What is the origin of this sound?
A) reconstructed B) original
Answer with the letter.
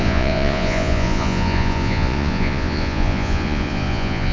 A